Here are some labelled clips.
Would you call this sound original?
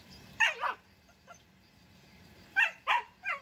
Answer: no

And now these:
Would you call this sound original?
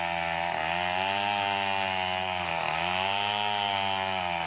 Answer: yes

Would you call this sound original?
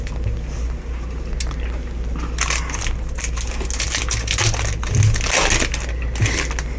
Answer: yes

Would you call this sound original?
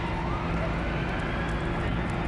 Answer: yes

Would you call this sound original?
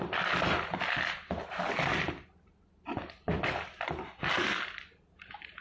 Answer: yes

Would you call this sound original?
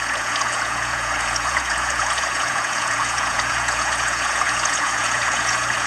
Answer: no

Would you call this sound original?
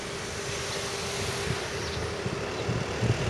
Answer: yes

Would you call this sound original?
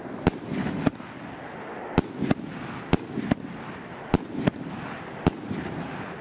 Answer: yes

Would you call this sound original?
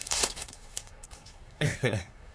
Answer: no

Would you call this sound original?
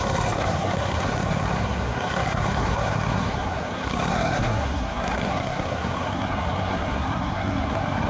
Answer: no